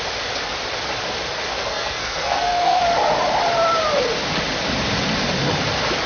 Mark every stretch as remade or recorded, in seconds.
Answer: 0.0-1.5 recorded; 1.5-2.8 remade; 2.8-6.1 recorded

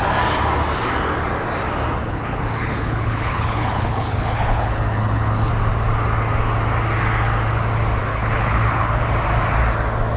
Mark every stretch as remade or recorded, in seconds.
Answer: 0.0-2.0 recorded; 2.0-5.5 remade; 5.5-8.1 recorded; 8.1-9.0 remade; 9.0-10.2 recorded

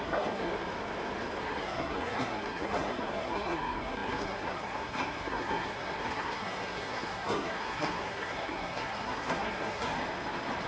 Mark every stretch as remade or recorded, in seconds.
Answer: 0.0-0.5 remade; 0.5-1.4 recorded; 1.4-9.9 remade; 9.9-10.7 recorded

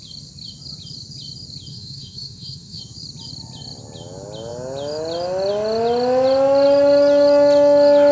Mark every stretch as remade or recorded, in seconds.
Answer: 0.0-1.7 recorded; 1.7-2.8 remade; 2.8-8.1 recorded

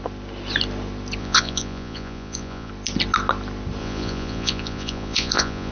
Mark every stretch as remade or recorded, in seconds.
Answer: 0.0-1.2 recorded; 1.2-2.7 remade; 2.7-3.8 recorded; 3.8-5.7 remade